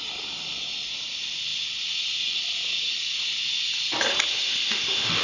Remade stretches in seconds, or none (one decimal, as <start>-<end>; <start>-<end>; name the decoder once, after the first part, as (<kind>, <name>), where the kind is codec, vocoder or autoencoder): 4.3-5.2 (autoencoder, DAC-VAE)